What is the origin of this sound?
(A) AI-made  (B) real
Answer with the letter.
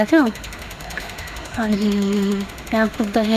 A